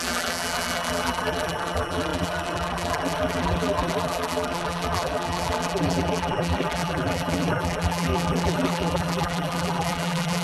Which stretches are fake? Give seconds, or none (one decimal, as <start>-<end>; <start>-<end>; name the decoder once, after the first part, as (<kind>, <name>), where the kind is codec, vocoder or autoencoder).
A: 0.0-10.4 (vocoder, BigVGAN v2)